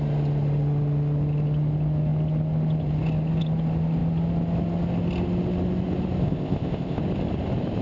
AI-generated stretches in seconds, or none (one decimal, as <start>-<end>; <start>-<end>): 6.2-7.0